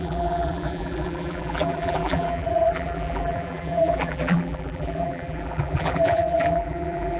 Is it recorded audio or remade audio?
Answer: remade